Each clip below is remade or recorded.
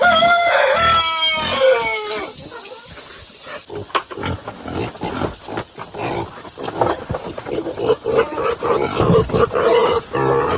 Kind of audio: recorded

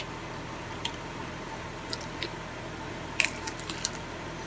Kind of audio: recorded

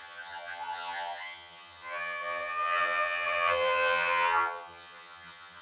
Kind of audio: remade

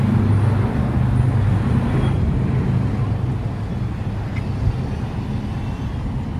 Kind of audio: recorded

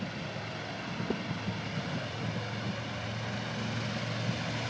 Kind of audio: recorded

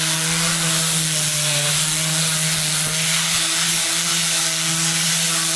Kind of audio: recorded